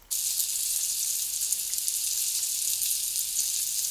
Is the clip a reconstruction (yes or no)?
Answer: no